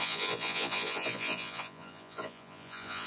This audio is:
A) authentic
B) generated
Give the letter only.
B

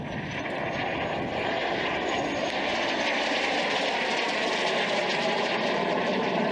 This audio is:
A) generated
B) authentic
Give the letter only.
B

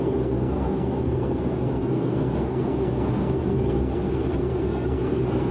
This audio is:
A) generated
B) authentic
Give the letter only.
A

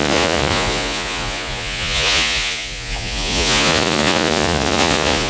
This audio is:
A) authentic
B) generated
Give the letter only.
B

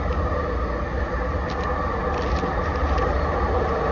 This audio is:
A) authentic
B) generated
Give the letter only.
A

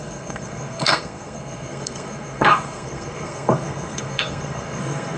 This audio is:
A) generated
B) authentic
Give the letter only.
A